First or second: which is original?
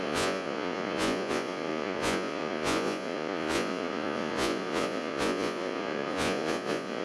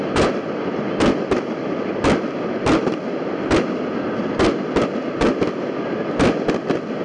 second